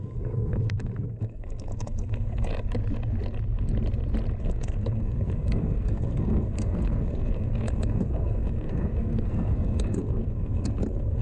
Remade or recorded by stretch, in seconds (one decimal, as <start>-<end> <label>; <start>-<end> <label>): 0.0-2.5 remade; 2.5-4.4 recorded; 4.4-11.2 remade